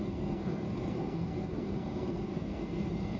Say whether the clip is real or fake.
fake